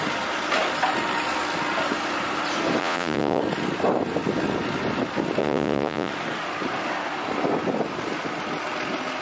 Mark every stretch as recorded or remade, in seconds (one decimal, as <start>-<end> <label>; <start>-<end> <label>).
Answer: 0.0-2.8 recorded; 2.8-3.4 remade; 3.4-5.4 recorded; 5.4-6.1 remade; 6.1-9.2 recorded